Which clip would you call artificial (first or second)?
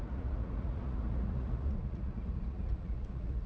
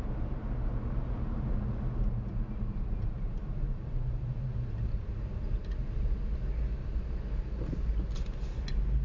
first